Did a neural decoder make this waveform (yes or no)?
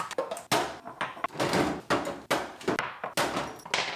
no